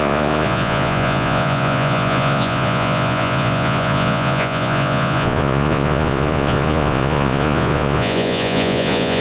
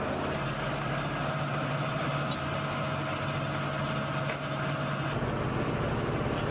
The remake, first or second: first